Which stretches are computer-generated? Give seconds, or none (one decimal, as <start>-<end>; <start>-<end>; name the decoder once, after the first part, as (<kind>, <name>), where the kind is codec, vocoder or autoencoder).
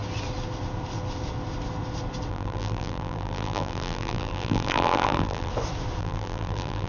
2.3-5.5 (vocoder, BigVGAN v2); 6.0-6.9